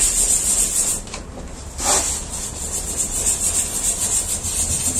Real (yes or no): yes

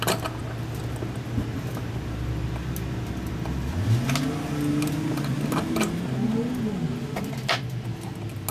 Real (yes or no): yes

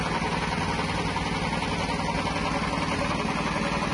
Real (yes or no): yes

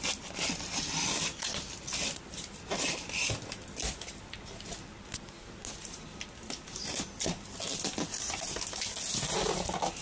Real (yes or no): yes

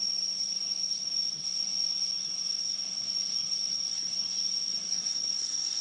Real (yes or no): no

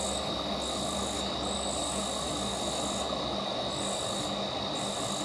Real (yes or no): yes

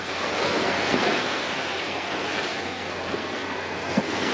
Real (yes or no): no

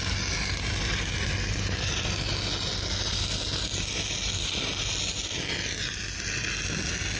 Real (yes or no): yes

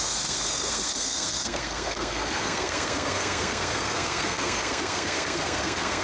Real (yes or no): no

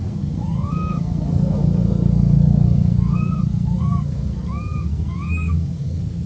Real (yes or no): no